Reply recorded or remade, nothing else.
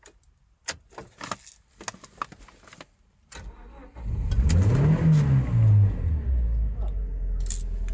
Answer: recorded